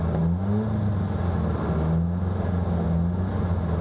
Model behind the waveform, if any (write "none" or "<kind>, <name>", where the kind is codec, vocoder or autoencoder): none